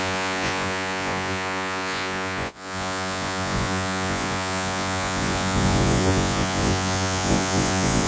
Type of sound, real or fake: fake